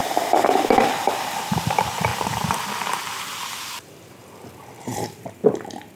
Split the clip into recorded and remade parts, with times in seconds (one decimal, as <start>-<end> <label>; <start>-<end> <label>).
0.0-5.4 remade; 5.4-6.0 recorded